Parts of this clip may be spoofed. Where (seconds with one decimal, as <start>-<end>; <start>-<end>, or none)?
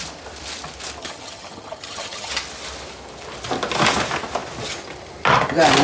1.0-2.3